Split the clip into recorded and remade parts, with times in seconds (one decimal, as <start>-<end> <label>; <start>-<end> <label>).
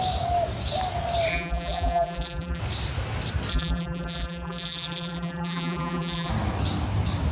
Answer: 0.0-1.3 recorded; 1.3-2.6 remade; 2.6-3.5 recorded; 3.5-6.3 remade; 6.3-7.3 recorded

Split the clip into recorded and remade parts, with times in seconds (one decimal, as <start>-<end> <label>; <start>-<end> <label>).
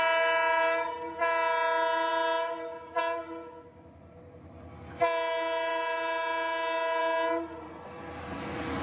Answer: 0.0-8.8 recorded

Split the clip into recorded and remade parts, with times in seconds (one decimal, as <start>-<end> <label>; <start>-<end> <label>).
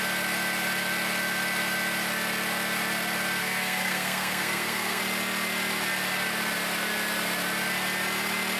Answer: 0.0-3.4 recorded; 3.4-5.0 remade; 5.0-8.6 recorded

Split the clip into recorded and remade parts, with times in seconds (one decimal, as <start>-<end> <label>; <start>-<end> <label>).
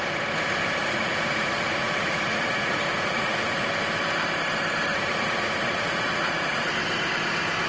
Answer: 0.0-0.8 recorded; 0.8-3.7 remade; 3.7-4.9 recorded; 4.9-6.7 remade; 6.7-7.7 recorded